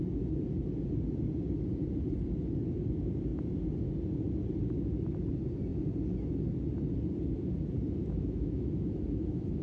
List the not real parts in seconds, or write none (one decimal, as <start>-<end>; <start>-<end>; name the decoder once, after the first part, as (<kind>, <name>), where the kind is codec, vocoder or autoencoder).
8.0-9.6 (autoencoder, DAC-VAE)